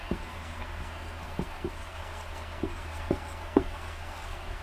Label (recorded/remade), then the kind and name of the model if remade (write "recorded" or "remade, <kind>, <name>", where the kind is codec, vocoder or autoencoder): remade, codec, SNAC